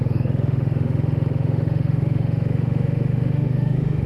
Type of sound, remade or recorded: remade